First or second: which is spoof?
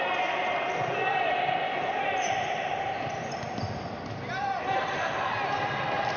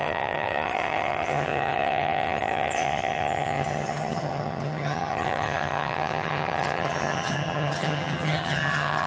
second